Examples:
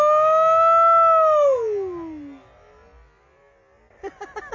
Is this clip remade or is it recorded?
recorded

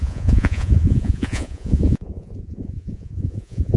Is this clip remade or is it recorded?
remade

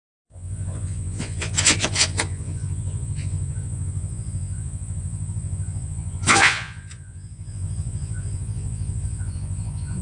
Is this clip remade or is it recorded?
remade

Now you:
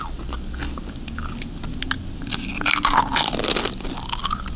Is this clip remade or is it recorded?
recorded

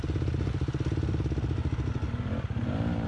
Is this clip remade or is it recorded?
recorded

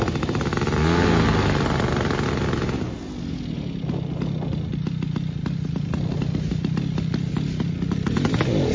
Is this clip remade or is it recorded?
recorded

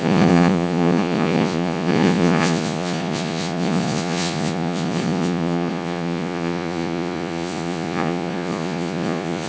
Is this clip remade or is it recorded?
remade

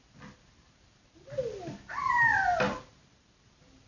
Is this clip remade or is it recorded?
recorded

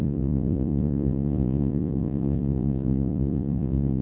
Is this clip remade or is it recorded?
remade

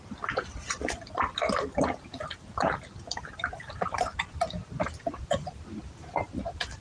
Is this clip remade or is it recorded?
recorded